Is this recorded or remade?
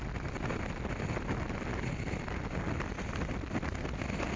recorded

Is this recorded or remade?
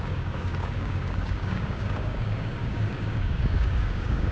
remade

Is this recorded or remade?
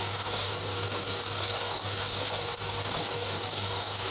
remade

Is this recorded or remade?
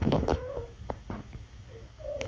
remade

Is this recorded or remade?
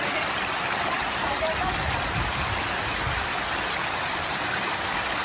recorded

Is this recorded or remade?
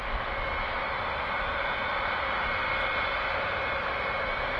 recorded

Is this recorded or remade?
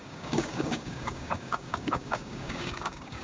remade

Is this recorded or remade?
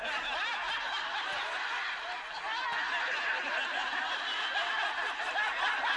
recorded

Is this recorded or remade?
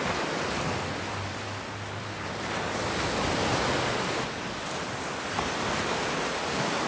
recorded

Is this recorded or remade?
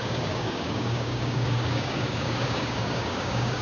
remade